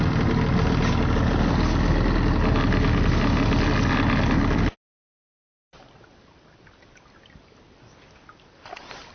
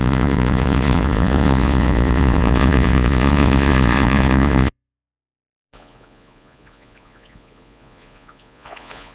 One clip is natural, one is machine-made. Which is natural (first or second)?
first